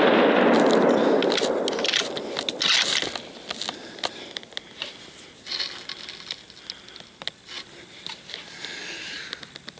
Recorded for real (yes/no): yes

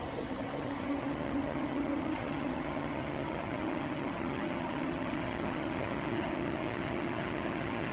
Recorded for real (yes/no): no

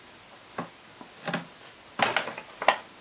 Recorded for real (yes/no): yes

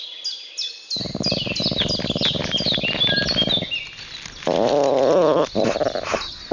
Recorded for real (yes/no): yes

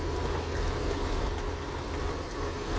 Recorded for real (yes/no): yes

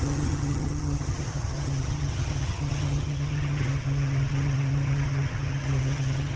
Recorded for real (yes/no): no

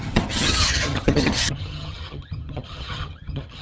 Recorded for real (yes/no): no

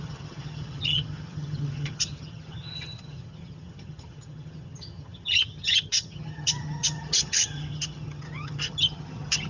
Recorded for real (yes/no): no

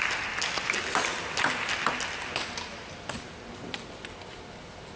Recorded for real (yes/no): yes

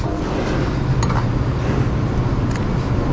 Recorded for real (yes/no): yes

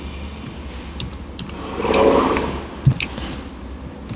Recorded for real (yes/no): yes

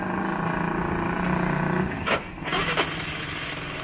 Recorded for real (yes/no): yes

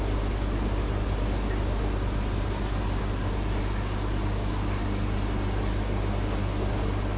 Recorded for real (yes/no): yes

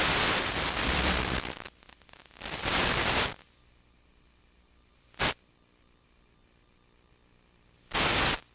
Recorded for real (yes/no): yes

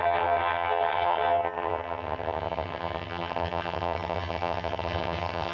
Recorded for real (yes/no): no